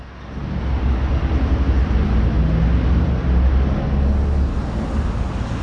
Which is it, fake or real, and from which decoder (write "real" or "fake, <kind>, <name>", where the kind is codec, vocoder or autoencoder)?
real